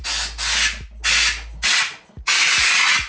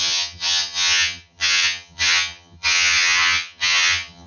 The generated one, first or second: second